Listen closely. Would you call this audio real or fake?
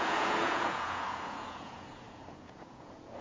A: fake